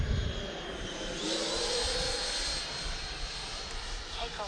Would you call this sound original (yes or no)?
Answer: yes